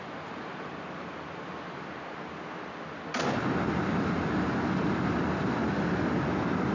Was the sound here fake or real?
real